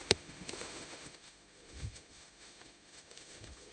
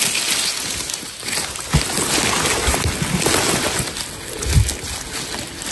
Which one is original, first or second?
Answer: second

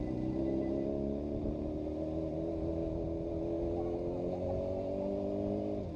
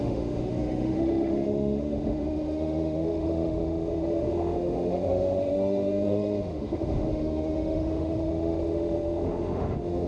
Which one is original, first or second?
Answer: first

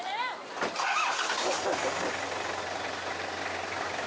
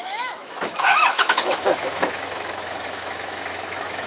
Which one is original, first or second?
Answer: first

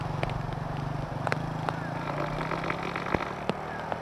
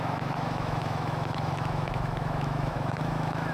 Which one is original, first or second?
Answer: first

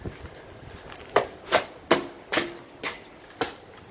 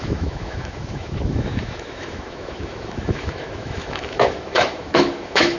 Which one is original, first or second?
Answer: first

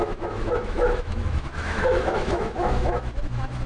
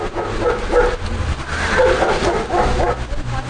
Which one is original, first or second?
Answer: second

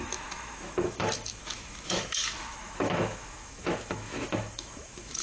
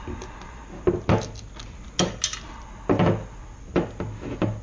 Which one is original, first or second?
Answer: second